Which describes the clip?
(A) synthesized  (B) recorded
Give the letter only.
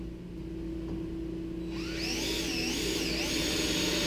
B